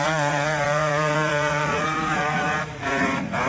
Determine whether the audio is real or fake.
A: fake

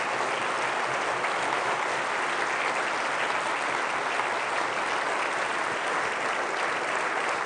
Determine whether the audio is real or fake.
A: real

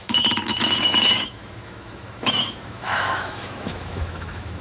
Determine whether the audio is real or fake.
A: fake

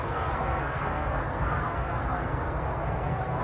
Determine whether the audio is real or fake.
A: fake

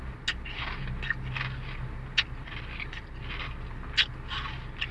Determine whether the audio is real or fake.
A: real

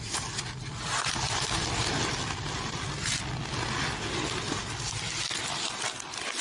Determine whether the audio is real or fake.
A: real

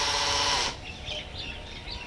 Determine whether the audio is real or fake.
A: real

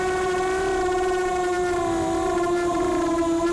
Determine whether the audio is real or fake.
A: fake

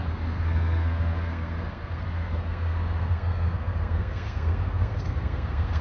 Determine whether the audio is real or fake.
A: fake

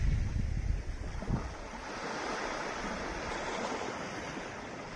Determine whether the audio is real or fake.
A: real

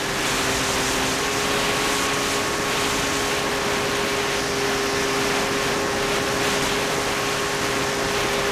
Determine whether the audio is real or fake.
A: real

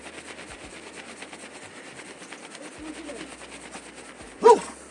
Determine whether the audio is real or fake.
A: real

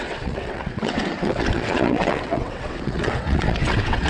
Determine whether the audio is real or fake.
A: fake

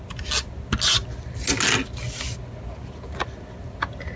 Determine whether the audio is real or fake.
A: real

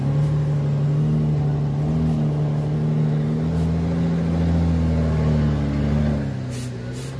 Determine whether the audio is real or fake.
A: real